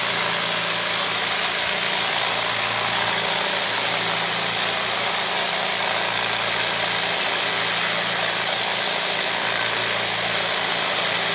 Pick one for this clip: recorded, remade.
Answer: recorded